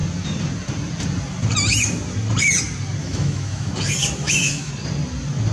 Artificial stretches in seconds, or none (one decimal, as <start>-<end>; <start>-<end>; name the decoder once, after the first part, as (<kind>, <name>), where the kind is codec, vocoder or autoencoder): 3.0-3.7 (autoencoder, DAC-VAE); 4.2-4.7